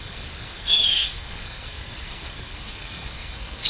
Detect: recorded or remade remade